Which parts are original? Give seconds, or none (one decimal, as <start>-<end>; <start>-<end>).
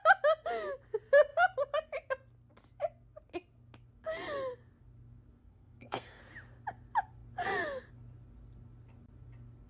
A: 0.0-5.4; 6.2-9.7